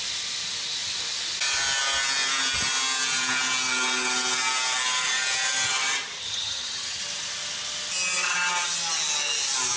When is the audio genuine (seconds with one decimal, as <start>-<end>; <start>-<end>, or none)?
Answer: 0.0-6.2; 7.0-9.8